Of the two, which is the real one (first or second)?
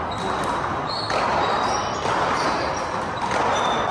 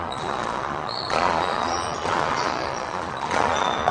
first